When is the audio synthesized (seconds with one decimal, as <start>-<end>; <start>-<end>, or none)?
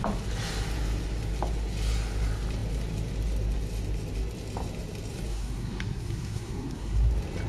5.3-7.1